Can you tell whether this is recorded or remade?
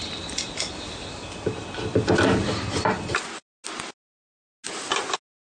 recorded